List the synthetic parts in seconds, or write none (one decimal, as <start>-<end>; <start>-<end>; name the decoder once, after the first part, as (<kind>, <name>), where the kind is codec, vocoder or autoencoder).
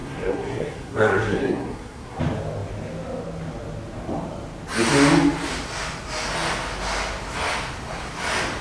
0.0-2.2 (codec, SNAC)